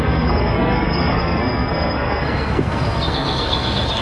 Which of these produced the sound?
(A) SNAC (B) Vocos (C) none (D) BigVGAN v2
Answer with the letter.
A